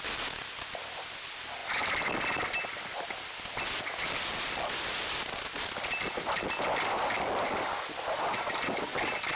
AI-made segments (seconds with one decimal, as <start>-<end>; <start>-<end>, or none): none